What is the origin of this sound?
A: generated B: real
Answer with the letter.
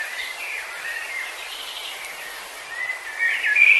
B